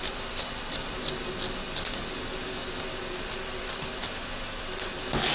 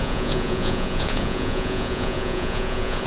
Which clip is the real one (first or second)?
first